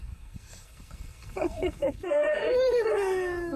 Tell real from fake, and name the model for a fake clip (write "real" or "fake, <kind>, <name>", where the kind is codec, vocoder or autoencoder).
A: fake, codec, SNAC